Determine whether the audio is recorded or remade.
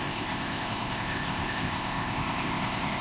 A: remade